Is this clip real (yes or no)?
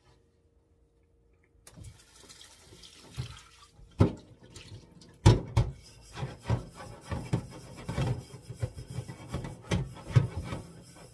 yes